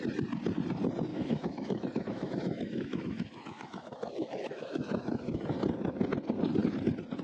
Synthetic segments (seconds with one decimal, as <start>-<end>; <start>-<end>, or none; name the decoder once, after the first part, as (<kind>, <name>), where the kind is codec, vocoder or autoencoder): 1.1-5.4 (autoencoder, DAC-VAE)